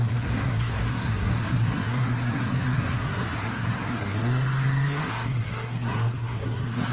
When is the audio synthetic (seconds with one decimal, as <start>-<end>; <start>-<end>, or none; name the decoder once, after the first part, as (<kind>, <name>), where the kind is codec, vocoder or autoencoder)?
0.0-6.9 (codec, SNAC)